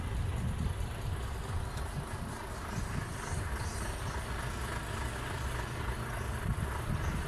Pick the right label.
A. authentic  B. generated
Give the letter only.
A